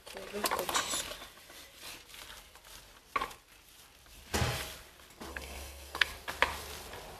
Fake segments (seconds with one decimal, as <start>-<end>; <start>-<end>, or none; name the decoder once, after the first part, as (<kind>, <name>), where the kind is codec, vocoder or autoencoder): 5.3-6.1 (codec, SNAC)